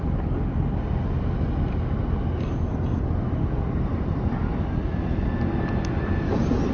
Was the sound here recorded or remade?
recorded